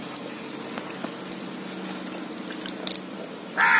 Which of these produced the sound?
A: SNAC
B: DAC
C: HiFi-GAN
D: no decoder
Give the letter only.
D